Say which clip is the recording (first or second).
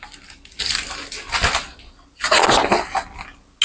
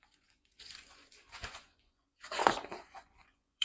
first